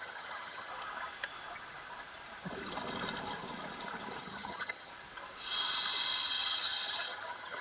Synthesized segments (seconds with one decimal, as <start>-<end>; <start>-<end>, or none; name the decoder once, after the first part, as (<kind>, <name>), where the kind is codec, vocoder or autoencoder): 0.0-0.7 (vocoder, HiFi-GAN); 4.2-4.9; 6.2-7.6